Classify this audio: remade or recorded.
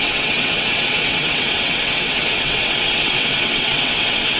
remade